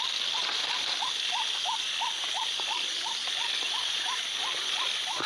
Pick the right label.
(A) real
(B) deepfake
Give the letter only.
A